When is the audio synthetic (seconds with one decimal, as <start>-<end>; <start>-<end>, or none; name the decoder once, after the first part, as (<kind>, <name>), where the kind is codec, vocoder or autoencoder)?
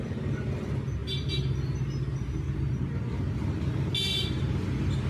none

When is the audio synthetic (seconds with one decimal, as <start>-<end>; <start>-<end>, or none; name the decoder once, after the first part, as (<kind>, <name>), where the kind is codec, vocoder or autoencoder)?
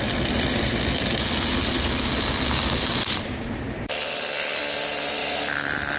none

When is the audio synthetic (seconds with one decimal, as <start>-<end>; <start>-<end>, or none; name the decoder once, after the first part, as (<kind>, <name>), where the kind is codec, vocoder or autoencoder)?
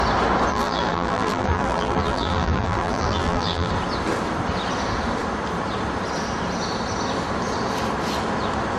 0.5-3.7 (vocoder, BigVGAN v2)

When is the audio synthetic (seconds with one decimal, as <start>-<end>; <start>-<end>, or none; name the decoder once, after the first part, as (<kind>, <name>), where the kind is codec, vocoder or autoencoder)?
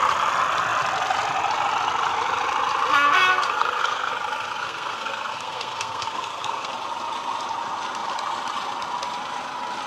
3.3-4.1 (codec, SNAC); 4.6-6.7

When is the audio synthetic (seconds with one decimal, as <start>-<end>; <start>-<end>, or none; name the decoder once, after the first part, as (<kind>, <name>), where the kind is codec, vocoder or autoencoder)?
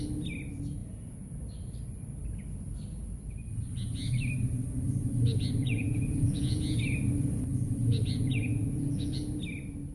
0.8-1.4 (vocoder, Vocos); 5.6-6.8; 7.5-9.4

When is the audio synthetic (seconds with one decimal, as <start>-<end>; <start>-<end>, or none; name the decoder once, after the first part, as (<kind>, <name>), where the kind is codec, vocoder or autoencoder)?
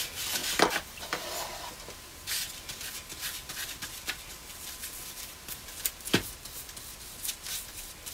0.0-0.4 (vocoder, BigVGAN v2); 1.0-1.5; 2.7-4.5